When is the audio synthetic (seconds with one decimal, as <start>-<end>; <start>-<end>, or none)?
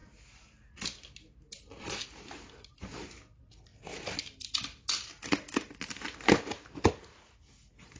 none